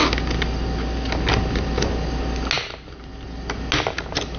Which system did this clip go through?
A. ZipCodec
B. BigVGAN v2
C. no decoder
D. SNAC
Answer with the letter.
C